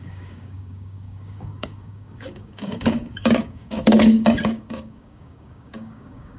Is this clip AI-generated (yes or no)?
yes